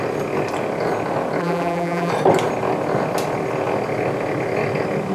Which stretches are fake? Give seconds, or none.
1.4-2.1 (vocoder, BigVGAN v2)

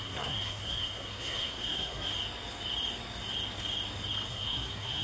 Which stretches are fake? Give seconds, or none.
0.0-2.1 (codec, SNAC); 4.3-5.0

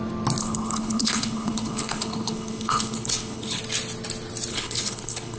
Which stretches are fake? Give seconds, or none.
0.4-3.6 (codec, HILCodec); 4.5-5.4